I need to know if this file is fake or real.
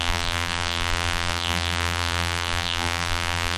fake